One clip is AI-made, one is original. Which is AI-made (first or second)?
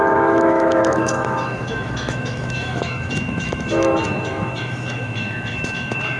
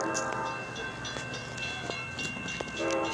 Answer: first